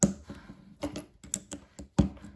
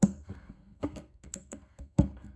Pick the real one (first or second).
first